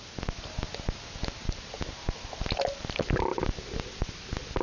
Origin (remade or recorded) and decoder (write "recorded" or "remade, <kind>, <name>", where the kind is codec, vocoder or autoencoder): recorded